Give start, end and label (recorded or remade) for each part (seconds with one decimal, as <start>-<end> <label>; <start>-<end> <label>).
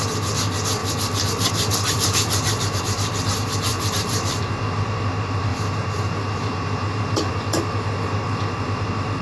0.0-0.8 recorded; 0.8-2.8 remade; 2.8-3.7 recorded; 3.7-4.5 remade; 4.5-5.5 recorded; 5.5-7.3 remade; 7.3-9.2 recorded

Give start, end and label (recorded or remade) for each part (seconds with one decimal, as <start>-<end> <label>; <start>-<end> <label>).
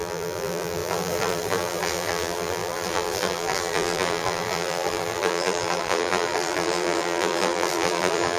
0.0-8.4 remade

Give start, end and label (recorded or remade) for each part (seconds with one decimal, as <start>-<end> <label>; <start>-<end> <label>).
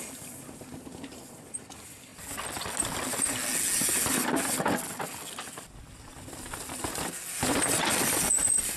0.0-8.8 recorded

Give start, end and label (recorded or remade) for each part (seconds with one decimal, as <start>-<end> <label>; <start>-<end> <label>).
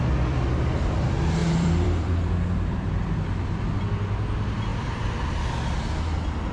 0.0-1.4 recorded; 1.4-3.7 remade; 3.7-4.7 recorded; 4.7-5.4 remade; 5.4-6.5 recorded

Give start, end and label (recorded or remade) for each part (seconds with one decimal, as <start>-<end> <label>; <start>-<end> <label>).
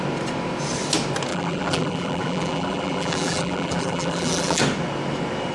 0.0-1.3 recorded; 1.3-4.6 remade; 4.6-5.5 recorded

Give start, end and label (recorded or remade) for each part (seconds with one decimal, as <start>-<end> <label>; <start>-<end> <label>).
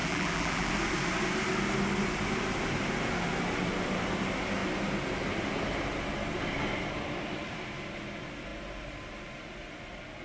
0.0-0.7 remade; 0.7-10.2 recorded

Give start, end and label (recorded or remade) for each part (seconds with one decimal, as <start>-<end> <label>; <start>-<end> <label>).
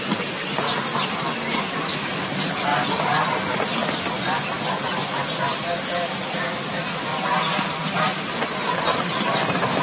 0.0-7.1 recorded; 7.1-8.2 remade; 8.2-8.9 recorded; 8.9-9.8 remade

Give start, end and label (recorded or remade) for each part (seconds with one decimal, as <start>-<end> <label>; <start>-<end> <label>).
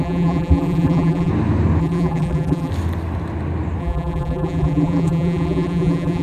0.0-1.3 remade; 1.3-1.8 recorded; 1.8-2.7 remade; 2.7-3.8 recorded; 3.8-6.2 remade